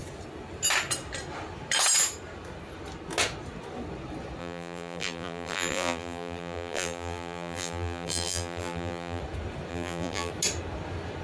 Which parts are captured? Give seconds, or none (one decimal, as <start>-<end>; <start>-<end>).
0.0-4.4; 9.2-9.7; 10.3-11.2